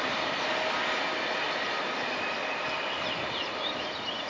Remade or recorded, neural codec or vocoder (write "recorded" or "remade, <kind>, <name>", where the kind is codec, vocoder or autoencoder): recorded